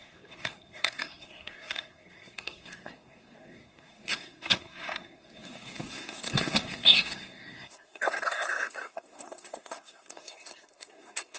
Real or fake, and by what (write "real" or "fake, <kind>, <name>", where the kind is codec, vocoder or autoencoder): fake, codec, SNAC